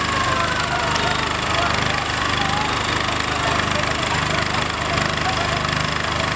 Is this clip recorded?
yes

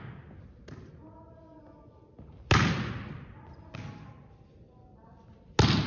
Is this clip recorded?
yes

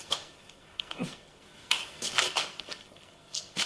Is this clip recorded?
no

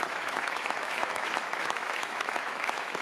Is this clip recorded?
no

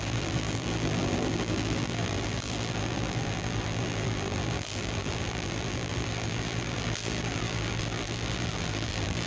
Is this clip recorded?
no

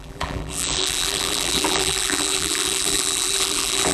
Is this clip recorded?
no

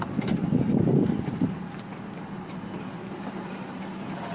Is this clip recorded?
yes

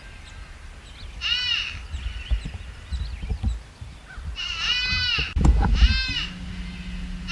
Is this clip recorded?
yes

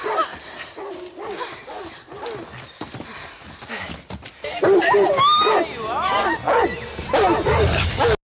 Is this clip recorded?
yes